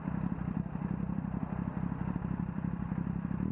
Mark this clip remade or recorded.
recorded